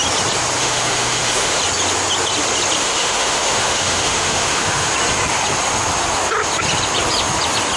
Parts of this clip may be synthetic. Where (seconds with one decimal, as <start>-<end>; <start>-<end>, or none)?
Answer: 0.6-1.6; 2.8-4.9